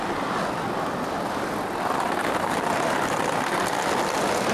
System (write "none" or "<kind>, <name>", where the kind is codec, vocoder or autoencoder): none